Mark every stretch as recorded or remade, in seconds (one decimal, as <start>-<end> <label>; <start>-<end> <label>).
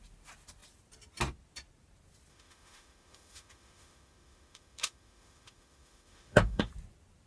0.0-2.3 recorded; 2.3-6.7 remade; 6.7-7.3 recorded